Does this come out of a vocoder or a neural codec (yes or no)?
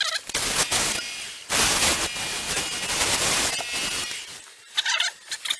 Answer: no